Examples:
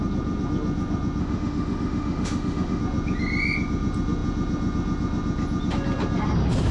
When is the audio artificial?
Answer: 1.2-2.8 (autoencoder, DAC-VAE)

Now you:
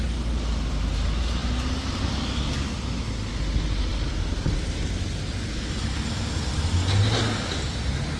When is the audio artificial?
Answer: none

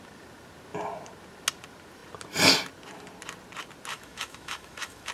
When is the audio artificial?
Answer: 3.9-5.1 (autoencoder, DAC-VAE)

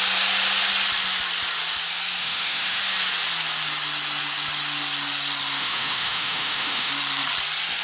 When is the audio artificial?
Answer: 2.2-2.8 (autoencoder, DAC-VAE); 5.6-6.9

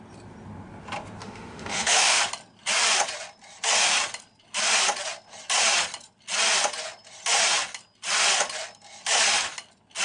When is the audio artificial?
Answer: 1.2-2.2 (autoencoder, DAC-VAE)

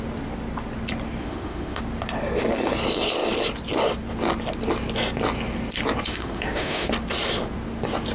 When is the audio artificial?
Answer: 1.2-1.8 (autoencoder, DAC-VAE); 6.1-6.9